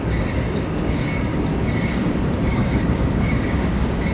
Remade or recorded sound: remade